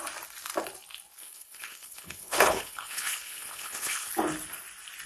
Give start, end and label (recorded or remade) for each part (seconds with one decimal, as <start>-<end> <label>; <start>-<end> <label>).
0.0-1.2 recorded; 1.2-4.1 remade; 4.1-5.1 recorded